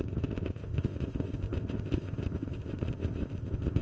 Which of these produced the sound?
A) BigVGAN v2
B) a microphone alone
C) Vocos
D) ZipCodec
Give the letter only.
D